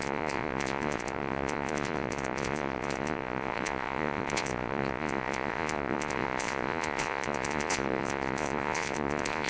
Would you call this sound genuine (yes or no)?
no